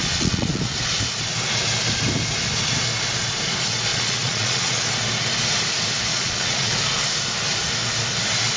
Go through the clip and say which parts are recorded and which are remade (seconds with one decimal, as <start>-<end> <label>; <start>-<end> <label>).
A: 0.0-0.6 remade; 0.6-3.9 recorded; 3.9-4.8 remade; 4.8-6.1 recorded; 6.1-6.7 remade; 6.7-8.6 recorded